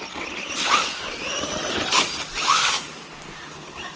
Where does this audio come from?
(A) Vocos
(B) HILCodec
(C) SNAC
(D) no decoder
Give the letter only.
D